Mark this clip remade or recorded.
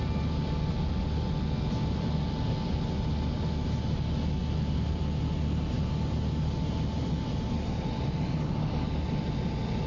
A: recorded